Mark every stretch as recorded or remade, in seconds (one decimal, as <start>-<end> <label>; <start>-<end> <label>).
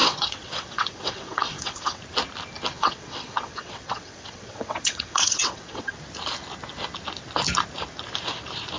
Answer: 0.0-2.0 remade; 2.0-2.7 recorded; 2.7-6.0 remade; 6.0-8.8 recorded